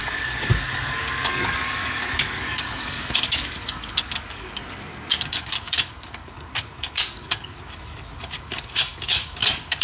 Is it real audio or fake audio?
fake